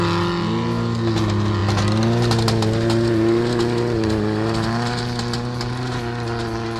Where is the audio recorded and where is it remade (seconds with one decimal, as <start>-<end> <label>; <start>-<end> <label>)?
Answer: 0.0-6.8 recorded